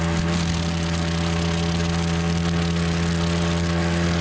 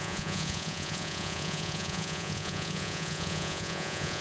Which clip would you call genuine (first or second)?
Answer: first